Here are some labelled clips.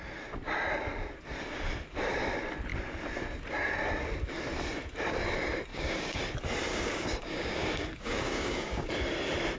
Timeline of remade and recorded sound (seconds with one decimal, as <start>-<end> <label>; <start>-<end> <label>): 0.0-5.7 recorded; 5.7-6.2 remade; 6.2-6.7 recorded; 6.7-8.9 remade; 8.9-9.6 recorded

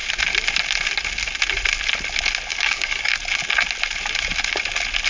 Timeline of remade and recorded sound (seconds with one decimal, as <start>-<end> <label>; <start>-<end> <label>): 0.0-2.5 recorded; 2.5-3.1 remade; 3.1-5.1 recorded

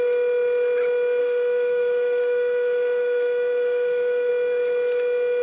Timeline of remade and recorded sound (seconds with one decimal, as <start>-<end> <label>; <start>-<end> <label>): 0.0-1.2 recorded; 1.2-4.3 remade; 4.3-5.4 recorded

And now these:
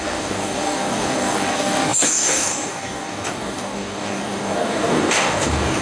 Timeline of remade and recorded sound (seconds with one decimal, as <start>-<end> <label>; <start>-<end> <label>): 0.0-5.8 remade

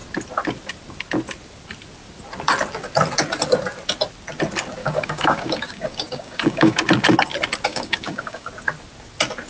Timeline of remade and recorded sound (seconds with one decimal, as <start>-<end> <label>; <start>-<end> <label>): 0.0-4.8 recorded; 4.8-6.8 remade; 6.8-7.7 recorded; 7.7-8.5 remade; 8.5-9.5 recorded

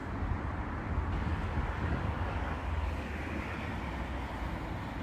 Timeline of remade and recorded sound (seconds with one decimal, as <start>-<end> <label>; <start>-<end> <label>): 0.0-1.3 recorded; 1.3-3.4 remade; 3.4-5.0 recorded